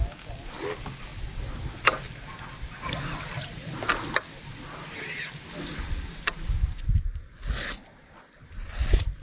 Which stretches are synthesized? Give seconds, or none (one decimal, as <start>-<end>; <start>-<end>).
none